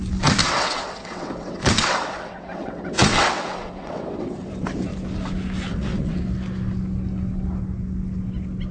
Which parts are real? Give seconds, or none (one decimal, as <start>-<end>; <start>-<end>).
0.0-0.4; 4.5-5.7; 6.2-8.7